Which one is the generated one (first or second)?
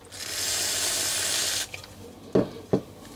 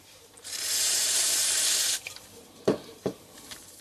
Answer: second